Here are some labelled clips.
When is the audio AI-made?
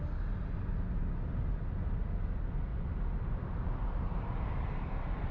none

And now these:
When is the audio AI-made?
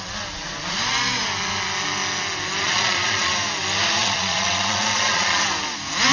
2.6-3.3 (vocoder, Vocos); 4.0-5.4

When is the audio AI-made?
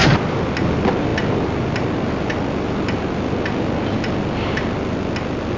none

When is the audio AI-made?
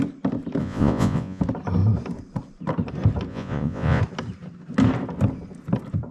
0.6-1.4 (vocoder, Vocos); 3.3-4.0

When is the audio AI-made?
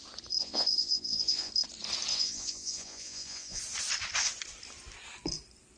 0.4-1.5 (vocoder, Vocos); 2.1-3.6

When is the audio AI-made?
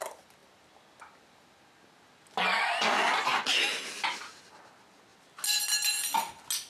none